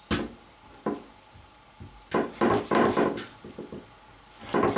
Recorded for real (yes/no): yes